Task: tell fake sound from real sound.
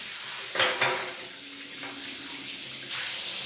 real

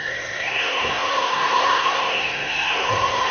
fake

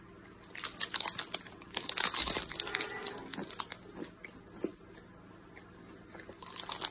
real